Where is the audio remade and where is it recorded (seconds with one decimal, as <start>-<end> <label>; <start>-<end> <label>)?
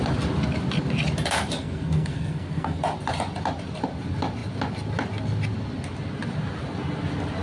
0.0-1.6 recorded; 1.6-2.8 remade; 2.8-7.4 recorded